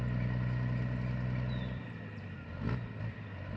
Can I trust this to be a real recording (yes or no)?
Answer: yes